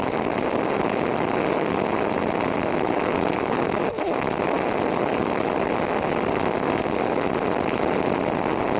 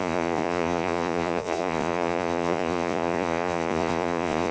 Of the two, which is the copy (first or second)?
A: second